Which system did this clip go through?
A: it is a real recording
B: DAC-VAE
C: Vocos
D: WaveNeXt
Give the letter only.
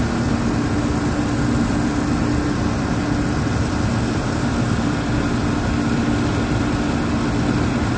A